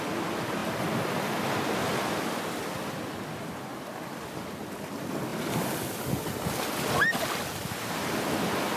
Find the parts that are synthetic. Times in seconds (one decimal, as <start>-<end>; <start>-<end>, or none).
none